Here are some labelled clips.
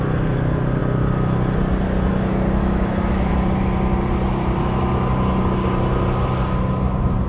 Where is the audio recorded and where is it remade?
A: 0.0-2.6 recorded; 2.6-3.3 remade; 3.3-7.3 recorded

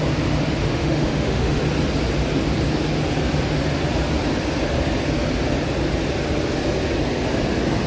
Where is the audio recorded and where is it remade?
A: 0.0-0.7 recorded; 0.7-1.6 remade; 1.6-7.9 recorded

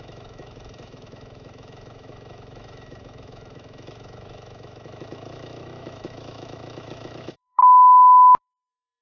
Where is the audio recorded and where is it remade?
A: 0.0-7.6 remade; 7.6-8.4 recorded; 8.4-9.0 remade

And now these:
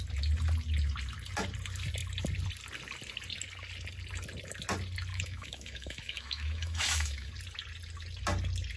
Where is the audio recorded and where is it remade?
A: 0.0-5.1 recorded; 5.1-7.3 remade; 7.3-8.8 recorded

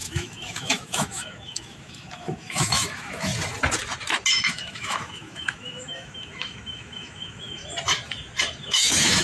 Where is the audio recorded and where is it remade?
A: 0.0-3.3 remade; 3.3-4.3 recorded; 4.3-7.6 remade; 7.6-8.6 recorded; 8.6-9.2 remade

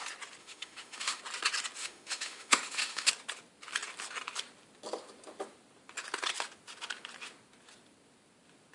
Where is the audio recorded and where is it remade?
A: 0.0-0.4 recorded; 0.4-1.2 remade; 1.2-1.8 recorded; 1.8-3.1 remade; 3.1-8.7 recorded